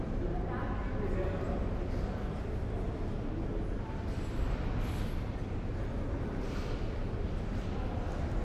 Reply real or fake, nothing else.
real